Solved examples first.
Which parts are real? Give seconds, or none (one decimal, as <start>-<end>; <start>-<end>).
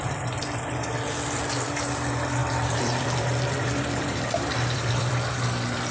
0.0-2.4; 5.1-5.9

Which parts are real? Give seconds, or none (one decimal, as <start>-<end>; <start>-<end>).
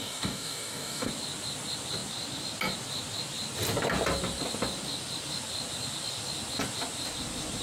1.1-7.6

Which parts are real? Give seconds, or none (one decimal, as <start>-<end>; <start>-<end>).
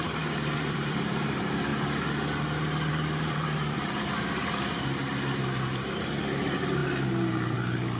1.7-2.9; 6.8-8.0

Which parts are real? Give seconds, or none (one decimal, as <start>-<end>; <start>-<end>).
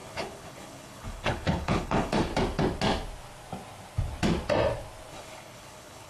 2.3-5.1